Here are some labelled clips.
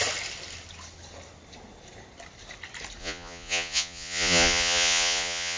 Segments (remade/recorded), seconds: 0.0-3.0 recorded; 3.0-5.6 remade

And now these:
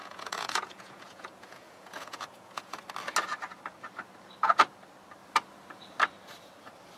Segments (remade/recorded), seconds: 0.0-2.8 remade; 2.8-7.0 recorded

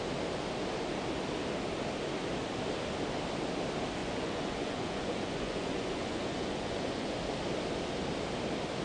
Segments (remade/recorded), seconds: 0.0-4.0 recorded; 4.0-7.2 remade; 7.2-8.8 recorded

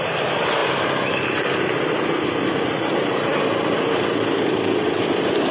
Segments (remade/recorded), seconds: 0.0-5.5 recorded

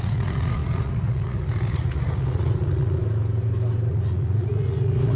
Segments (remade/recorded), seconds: 0.0-3.0 remade; 3.0-3.9 recorded; 3.9-5.2 remade